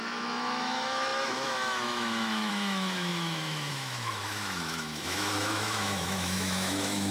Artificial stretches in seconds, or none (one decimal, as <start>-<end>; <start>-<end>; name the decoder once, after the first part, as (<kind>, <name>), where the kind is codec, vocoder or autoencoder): 0.0-7.1 (autoencoder, DAC-VAE)